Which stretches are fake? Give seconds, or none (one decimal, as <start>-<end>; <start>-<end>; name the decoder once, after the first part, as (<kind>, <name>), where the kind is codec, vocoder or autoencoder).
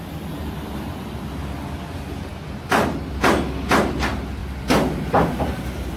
none